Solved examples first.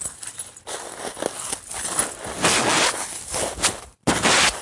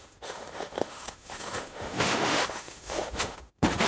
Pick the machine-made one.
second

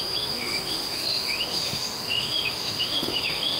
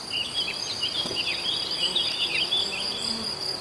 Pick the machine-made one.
first